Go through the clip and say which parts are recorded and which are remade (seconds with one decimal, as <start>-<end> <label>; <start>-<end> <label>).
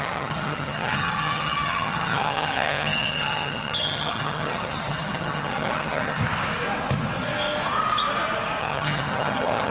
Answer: 0.0-6.2 remade; 6.2-8.6 recorded; 8.6-9.7 remade